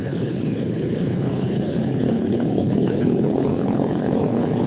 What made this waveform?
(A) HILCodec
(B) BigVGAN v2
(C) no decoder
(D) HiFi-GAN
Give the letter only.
A